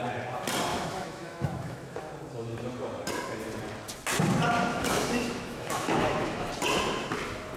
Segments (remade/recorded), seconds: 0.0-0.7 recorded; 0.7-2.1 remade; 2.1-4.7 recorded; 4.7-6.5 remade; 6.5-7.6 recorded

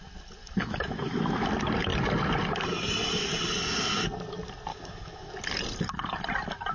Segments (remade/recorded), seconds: 0.0-0.4 recorded; 0.4-1.5 remade; 1.5-4.7 recorded; 4.7-5.3 remade; 5.3-6.7 recorded